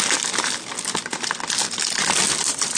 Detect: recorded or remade recorded